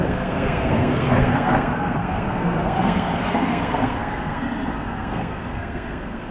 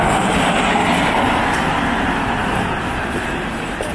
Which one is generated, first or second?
first